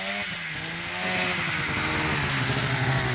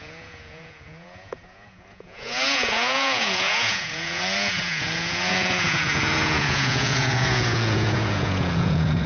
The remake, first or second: second